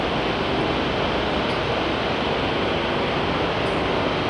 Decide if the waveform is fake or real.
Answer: real